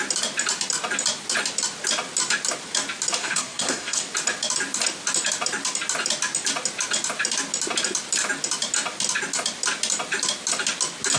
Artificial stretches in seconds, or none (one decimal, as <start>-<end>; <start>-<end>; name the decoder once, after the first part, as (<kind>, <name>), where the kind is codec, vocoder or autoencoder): 3.2-4.0 (codec, SNAC)